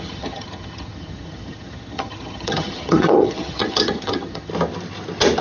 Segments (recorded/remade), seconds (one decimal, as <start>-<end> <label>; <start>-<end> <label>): 0.0-4.5 remade; 4.5-5.4 recorded

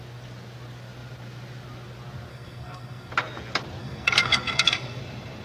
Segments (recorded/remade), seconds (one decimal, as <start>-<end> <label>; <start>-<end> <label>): 0.0-2.3 recorded; 2.3-3.1 remade; 3.1-3.8 recorded; 3.8-5.0 remade; 5.0-5.4 recorded